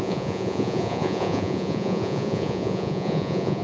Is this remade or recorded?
remade